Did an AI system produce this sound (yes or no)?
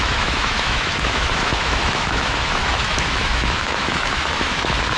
yes